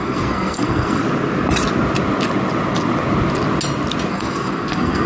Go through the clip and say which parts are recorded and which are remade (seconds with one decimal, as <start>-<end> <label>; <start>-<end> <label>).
0.0-1.0 remade; 1.0-4.1 recorded; 4.1-5.1 remade